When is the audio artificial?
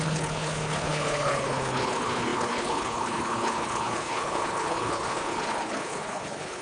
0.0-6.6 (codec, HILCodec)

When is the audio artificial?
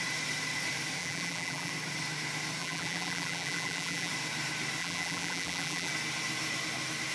1.0-1.7 (vocoder, BigVGAN v2); 2.6-4.1; 4.8-5.9